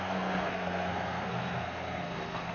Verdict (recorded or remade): remade